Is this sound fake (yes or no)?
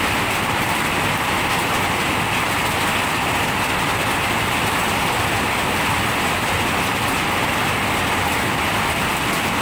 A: no